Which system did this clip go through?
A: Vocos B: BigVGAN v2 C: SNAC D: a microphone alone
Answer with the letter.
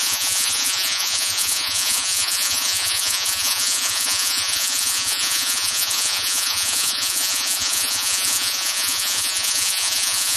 A